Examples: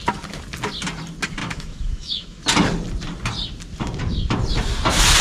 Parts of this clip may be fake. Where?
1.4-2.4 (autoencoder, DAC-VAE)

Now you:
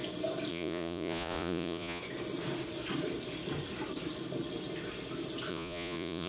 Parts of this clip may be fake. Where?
0.5-2.0 (vocoder, Vocos); 5.5-6.3